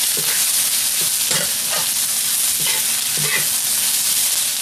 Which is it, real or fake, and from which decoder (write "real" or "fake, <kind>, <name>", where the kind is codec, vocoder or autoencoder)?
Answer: real